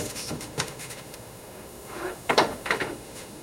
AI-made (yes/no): yes